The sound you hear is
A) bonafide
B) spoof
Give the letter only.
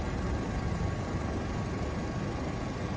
A